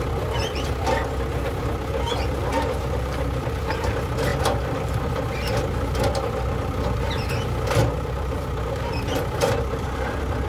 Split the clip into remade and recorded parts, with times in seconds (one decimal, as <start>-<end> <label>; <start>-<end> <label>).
0.0-1.0 remade; 1.0-1.6 recorded; 1.6-10.5 remade